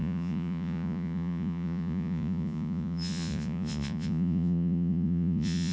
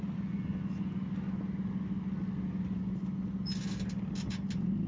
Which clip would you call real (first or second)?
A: second